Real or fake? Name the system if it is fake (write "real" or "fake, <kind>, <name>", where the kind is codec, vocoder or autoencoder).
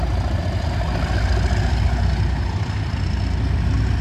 real